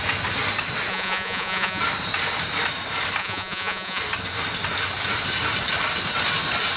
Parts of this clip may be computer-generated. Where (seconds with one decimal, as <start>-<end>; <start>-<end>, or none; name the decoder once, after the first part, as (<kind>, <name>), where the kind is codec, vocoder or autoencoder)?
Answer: 0.9-1.8 (vocoder, Vocos); 3.2-4.0